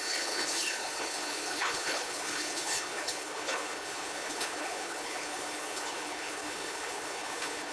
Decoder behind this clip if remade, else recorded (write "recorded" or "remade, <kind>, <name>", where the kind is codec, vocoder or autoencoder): remade, codec, HILCodec